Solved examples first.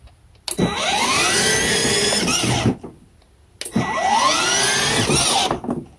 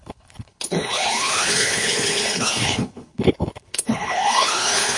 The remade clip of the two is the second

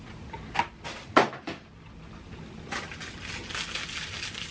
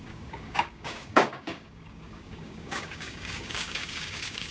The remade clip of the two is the second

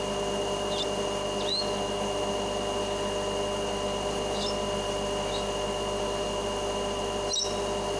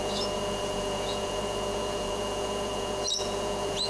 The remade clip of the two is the second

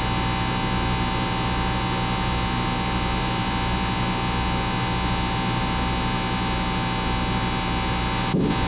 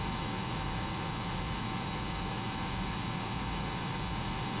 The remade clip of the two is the second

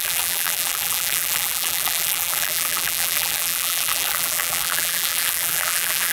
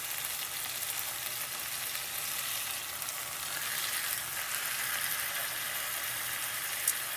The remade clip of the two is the first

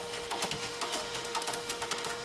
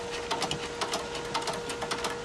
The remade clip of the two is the first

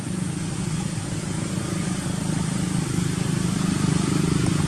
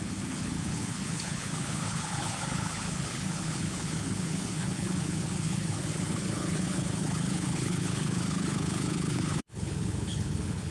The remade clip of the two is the second